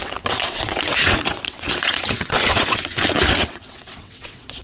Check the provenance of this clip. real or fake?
fake